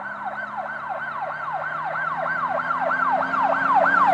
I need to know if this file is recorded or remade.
recorded